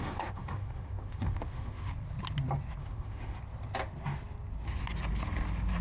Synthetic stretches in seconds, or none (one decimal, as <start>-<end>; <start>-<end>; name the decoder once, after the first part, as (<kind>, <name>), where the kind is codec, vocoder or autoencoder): 0.0-1.9 (autoencoder, DAC-VAE); 2.8-3.4